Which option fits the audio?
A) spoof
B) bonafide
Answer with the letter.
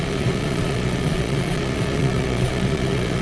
A